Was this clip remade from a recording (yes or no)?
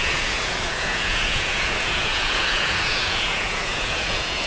yes